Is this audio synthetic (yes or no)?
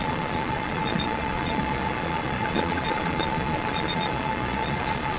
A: yes